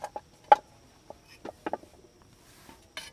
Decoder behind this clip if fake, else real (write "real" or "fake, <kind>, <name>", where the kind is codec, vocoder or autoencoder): real